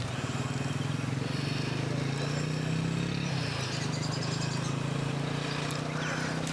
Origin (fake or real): real